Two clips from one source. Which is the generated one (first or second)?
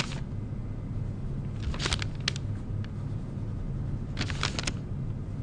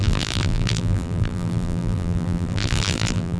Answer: second